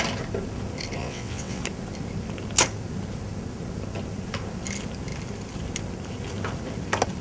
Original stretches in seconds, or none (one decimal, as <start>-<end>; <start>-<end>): 0.0-1.0; 1.6-7.2